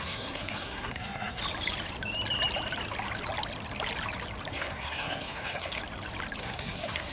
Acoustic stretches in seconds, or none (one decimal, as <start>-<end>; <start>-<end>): 1.4-4.5; 5.8-6.4